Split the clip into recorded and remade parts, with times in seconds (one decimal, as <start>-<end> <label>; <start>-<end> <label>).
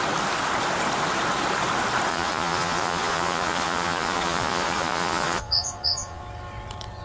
0.0-2.1 recorded; 2.1-6.2 remade; 6.2-7.0 recorded